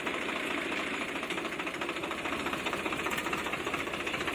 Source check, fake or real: fake